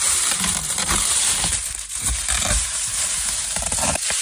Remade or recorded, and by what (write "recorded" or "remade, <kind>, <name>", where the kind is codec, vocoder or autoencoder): remade, vocoder, BigVGAN v2